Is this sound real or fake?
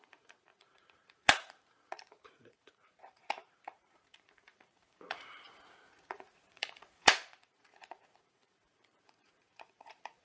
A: fake